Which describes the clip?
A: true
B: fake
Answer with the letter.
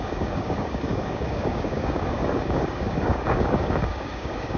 B